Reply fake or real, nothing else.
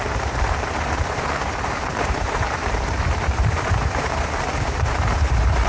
fake